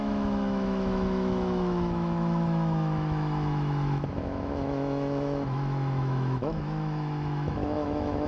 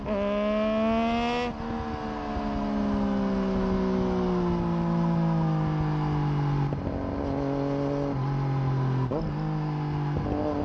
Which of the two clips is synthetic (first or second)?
first